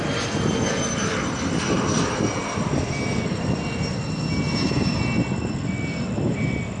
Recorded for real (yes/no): yes